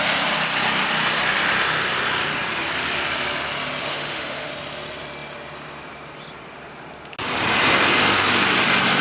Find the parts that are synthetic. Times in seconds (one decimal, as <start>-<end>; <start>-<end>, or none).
3.8-4.5